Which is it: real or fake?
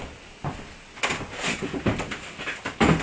real